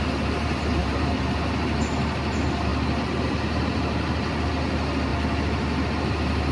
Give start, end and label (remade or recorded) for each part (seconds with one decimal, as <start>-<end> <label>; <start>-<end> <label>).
0.0-0.8 recorded; 0.8-1.4 remade; 1.4-6.5 recorded